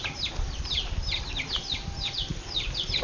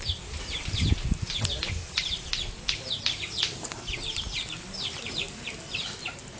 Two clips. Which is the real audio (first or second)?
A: second